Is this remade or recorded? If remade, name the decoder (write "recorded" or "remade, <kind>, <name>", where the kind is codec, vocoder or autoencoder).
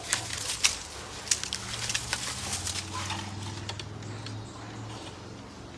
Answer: recorded